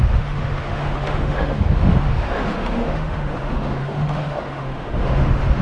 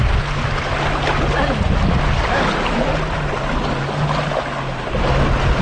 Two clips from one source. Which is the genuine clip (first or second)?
second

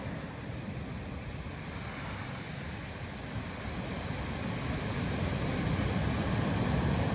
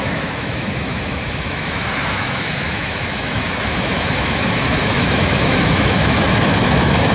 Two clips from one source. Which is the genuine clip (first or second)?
first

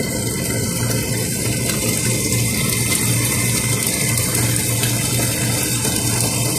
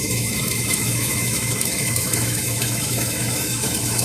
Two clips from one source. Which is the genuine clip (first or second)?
first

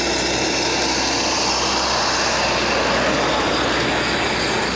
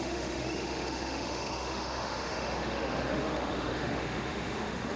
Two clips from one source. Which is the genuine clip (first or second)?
first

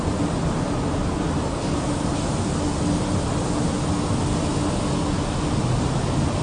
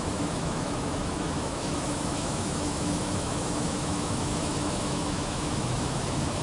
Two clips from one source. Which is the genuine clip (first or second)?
first